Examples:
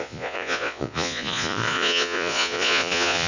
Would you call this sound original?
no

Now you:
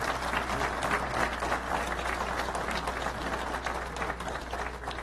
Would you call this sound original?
yes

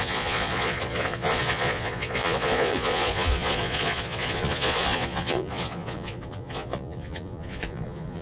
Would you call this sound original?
no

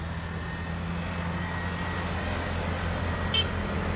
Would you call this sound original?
yes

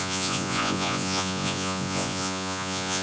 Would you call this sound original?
no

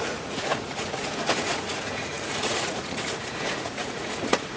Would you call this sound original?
no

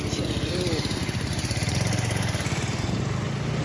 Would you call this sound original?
yes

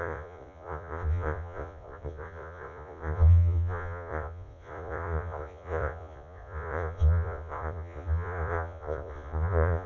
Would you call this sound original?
no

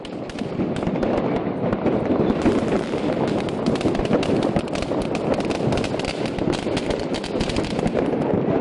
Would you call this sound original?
yes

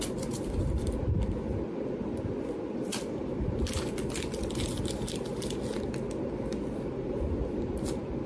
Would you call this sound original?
yes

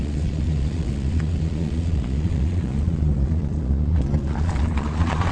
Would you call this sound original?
no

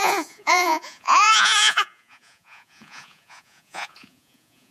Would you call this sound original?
no